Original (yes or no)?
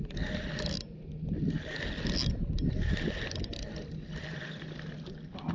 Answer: yes